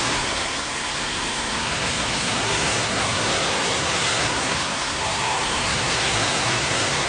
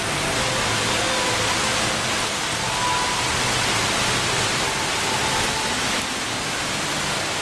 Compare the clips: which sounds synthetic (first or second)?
first